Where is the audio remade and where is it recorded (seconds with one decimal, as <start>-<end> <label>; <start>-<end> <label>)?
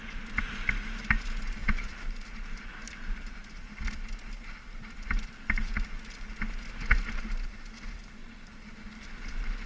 0.0-1.6 recorded; 1.6-2.7 remade; 2.7-8.2 recorded; 8.2-8.9 remade; 8.9-9.7 recorded